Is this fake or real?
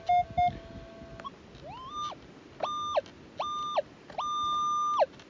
real